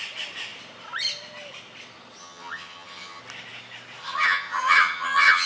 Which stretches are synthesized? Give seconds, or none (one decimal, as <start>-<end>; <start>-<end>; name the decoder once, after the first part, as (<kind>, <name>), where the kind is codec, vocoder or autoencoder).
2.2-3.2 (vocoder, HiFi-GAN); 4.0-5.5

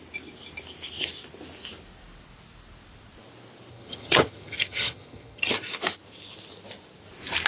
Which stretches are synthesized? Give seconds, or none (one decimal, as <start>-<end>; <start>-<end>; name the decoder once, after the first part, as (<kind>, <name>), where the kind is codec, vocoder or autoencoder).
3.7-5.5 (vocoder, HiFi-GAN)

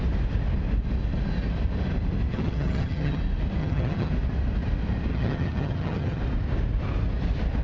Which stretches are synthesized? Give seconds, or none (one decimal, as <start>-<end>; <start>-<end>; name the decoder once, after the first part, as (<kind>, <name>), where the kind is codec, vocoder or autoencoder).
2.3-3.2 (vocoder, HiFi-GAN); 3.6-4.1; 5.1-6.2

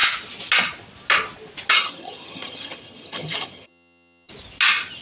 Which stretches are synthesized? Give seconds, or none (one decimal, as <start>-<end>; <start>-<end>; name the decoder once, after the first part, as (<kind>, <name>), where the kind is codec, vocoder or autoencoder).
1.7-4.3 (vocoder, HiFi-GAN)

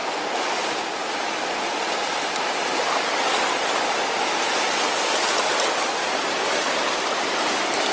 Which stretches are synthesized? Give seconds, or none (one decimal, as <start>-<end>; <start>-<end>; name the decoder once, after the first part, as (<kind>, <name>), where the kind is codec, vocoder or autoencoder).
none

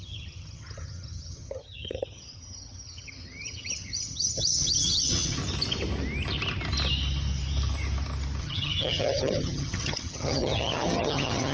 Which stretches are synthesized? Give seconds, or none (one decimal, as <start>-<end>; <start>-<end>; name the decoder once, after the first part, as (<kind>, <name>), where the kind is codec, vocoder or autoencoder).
0.0-5.4 (vocoder, HiFi-GAN); 8.4-11.5

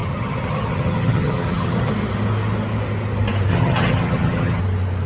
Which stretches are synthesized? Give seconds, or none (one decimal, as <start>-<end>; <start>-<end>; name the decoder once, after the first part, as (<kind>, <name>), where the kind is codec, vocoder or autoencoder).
0.0-1.9 (vocoder, HiFi-GAN); 3.5-4.6